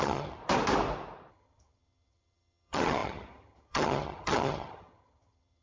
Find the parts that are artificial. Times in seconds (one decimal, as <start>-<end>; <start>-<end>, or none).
0.0-0.4; 1.3-5.6